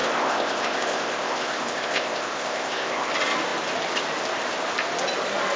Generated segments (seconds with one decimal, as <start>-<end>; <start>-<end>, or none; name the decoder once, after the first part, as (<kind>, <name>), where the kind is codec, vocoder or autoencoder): 0.0-3.1 (codec, ZipCodec)